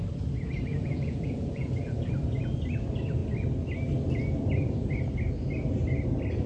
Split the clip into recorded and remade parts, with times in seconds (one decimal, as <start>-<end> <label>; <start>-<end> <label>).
0.0-0.7 recorded; 0.7-1.9 remade; 1.9-6.5 recorded